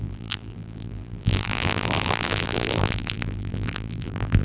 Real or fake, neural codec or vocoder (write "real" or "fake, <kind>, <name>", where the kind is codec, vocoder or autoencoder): fake, vocoder, BigVGAN v2